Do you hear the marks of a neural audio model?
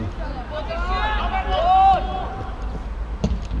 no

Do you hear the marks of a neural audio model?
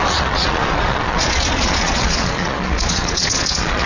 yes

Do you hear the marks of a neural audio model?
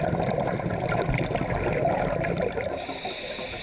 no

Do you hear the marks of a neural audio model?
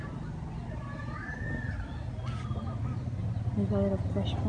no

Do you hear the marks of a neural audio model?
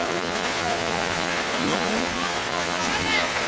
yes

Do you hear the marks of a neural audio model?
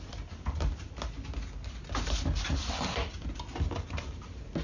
no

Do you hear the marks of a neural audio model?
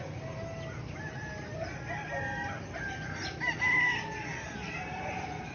no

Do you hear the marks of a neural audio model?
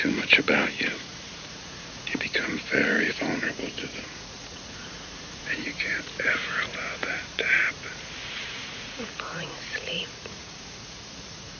yes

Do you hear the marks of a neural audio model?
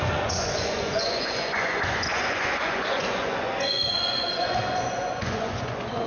yes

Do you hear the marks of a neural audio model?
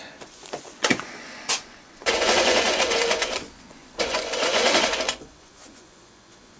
yes